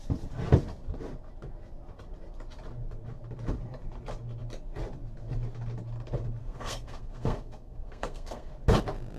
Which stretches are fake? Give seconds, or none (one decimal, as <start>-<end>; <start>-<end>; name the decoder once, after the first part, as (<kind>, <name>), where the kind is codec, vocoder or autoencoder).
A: 6.4-8.5 (codec, SNAC)